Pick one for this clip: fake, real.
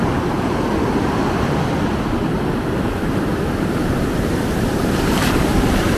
real